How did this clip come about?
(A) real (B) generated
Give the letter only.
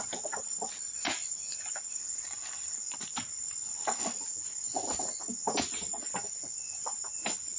A